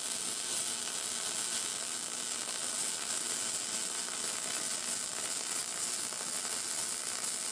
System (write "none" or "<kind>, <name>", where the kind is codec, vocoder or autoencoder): none